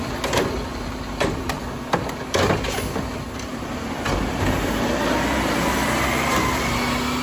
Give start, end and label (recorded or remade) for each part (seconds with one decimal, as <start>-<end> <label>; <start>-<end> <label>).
0.0-0.7 recorded; 0.7-1.6 remade; 1.6-3.5 recorded; 3.5-6.3 remade; 6.3-7.2 recorded